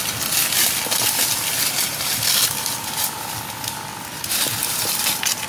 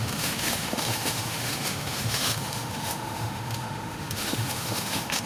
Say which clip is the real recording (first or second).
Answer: first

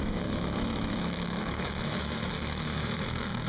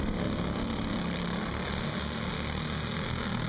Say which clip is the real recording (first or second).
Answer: second